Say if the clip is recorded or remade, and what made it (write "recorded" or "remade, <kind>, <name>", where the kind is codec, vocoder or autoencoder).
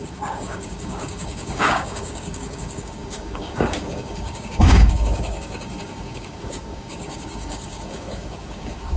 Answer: remade, codec, DAC